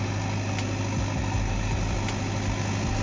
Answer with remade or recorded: recorded